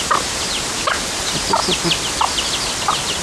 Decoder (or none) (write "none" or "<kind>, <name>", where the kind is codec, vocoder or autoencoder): none